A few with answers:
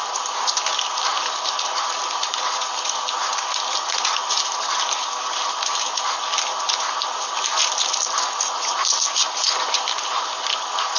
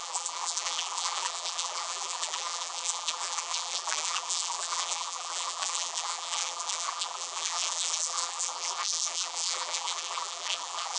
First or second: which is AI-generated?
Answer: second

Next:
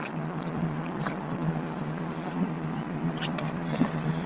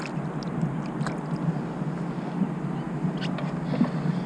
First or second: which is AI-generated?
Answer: first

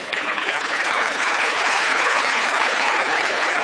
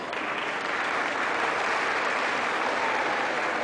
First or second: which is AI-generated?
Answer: first